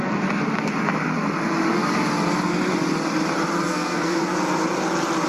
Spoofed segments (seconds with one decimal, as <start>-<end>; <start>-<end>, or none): 3.7-4.3